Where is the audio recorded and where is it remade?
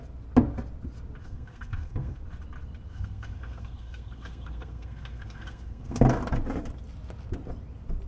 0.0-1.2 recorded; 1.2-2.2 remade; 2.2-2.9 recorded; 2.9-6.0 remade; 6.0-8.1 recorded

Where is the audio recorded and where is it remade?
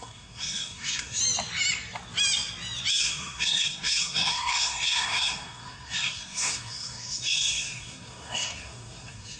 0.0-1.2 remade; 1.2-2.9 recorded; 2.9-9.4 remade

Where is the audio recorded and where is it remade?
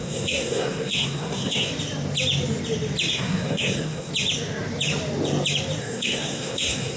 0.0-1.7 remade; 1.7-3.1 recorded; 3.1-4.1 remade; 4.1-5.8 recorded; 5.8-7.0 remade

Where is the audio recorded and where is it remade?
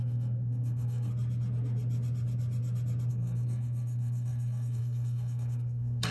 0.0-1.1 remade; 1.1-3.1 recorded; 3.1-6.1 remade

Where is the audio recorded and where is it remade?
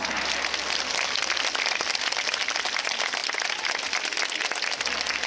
0.0-5.3 recorded